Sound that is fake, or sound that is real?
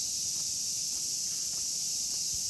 real